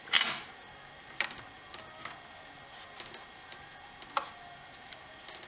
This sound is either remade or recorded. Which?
recorded